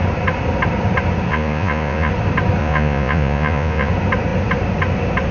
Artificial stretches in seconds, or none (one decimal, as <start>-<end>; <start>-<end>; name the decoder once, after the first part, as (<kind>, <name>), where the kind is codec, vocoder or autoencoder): 1.3-2.1 (vocoder, Vocos); 2.6-3.9